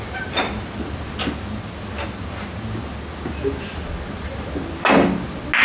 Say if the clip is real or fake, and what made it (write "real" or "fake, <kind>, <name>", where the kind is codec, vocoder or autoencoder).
real